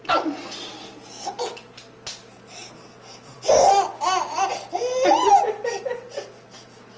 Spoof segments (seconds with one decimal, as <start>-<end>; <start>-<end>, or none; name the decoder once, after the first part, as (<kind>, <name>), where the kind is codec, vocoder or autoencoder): none